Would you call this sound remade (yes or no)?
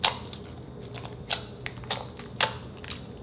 no